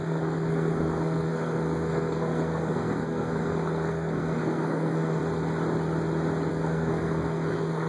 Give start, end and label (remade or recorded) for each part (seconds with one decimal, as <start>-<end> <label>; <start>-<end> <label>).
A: 0.0-5.2 remade; 5.2-6.5 recorded; 6.5-7.9 remade